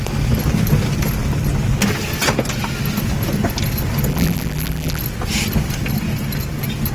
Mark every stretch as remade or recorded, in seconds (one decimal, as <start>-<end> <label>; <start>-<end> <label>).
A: 0.0-4.1 recorded; 4.1-5.0 remade; 5.0-6.9 recorded